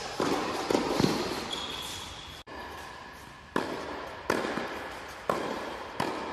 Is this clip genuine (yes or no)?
no